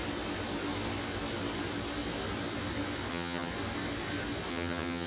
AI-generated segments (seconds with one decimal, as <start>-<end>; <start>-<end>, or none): 3.1-3.5; 4.5-5.1